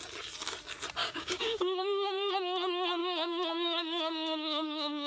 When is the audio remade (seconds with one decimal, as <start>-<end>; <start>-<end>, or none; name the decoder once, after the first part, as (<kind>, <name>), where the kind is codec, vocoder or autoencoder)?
1.0-2.3 (codec, DAC); 3.0-5.1